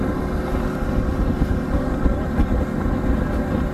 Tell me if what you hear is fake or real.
real